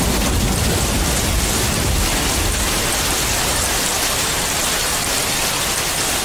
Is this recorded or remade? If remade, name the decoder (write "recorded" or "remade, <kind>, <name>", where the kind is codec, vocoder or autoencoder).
recorded